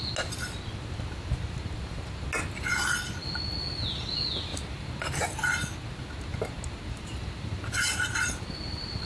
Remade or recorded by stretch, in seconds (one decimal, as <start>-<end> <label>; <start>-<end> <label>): 0.0-9.1 recorded